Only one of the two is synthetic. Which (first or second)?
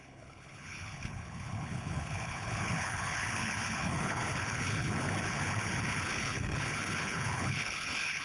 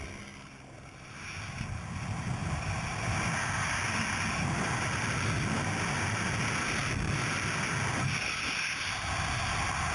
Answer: first